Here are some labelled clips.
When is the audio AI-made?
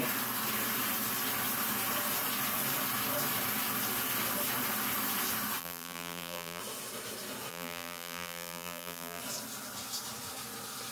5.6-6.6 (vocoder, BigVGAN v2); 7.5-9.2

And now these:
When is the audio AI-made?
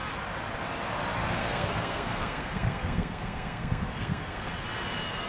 1.4-4.5 (codec, SNAC)